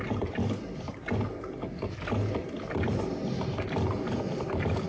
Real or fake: real